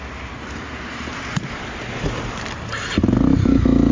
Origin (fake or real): real